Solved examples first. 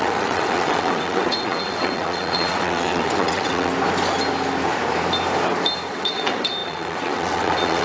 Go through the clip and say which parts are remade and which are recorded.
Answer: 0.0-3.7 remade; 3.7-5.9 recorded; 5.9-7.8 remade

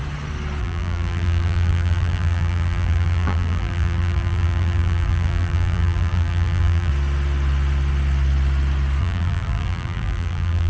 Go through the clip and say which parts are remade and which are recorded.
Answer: 0.0-0.6 recorded; 0.6-6.9 remade; 6.9-9.0 recorded; 9.0-10.7 remade

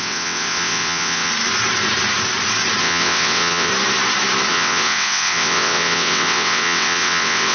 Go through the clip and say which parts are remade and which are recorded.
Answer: 0.0-1.3 remade; 1.3-2.8 recorded; 2.8-3.7 remade; 3.7-4.5 recorded; 4.5-7.5 remade

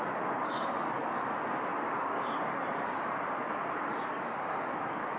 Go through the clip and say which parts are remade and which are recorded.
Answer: 0.0-1.0 remade; 1.0-2.6 recorded; 2.6-3.9 remade; 3.9-5.2 recorded

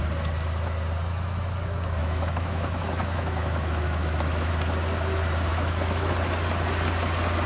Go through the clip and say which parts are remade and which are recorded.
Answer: 0.0-2.0 recorded; 2.0-4.5 remade; 4.5-5.5 recorded; 5.5-6.1 remade; 6.1-7.5 recorded